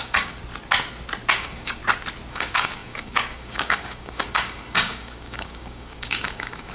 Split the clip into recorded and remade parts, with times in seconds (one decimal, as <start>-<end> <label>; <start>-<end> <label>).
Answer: 0.0-0.4 remade; 0.4-1.3 recorded; 1.3-1.8 remade; 1.8-2.3 recorded; 2.3-6.7 remade